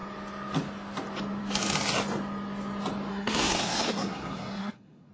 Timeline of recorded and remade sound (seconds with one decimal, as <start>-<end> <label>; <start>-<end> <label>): 0.0-3.1 recorded; 3.1-5.1 remade